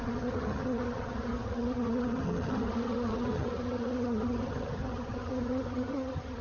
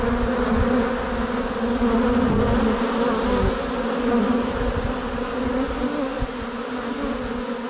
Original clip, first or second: second